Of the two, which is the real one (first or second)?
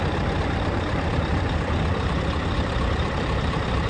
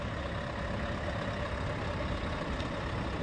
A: second